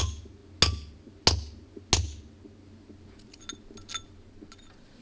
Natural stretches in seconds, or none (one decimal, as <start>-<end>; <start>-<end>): 0.0-5.0